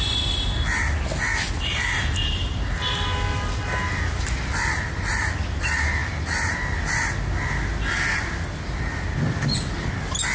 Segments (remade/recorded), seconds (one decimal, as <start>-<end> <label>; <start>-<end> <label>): 0.0-10.3 recorded